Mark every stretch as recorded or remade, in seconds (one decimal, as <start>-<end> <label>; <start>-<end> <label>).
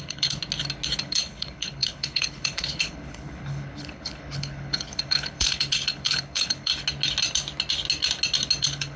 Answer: 0.0-0.4 remade; 0.4-1.0 recorded; 1.0-6.7 remade; 6.7-8.6 recorded; 8.6-9.0 remade